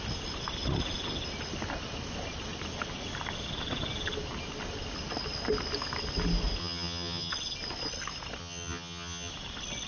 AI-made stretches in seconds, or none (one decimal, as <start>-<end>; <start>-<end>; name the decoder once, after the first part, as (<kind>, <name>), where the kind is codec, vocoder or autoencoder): 6.6-7.3 (vocoder, HiFi-GAN); 8.4-9.3